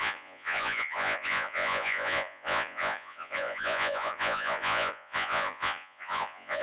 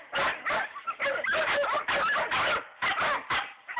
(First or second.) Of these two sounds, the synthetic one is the first